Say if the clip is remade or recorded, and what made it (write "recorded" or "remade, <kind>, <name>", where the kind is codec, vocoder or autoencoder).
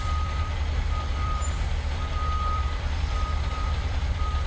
remade, vocoder, BigVGAN v2